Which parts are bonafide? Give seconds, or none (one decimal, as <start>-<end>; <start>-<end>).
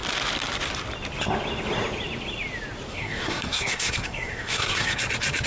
0.0-2.9; 5.0-5.5